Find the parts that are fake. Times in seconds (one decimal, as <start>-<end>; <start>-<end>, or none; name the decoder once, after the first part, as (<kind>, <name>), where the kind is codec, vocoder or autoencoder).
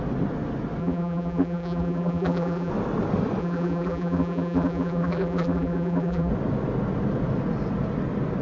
0.8-2.7 (vocoder, BigVGAN v2); 3.4-6.3